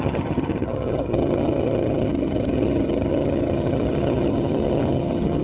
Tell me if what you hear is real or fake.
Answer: fake